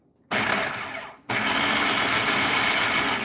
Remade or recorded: recorded